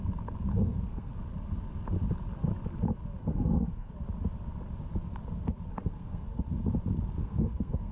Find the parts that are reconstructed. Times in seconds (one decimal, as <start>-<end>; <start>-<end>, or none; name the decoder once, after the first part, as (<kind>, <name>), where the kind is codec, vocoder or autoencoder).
0.5-1.1 (codec, SNAC); 3.2-3.9; 5.7-6.4; 7.2-7.9